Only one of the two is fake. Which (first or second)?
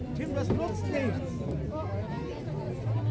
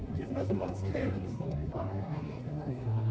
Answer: second